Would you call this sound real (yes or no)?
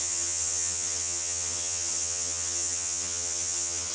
no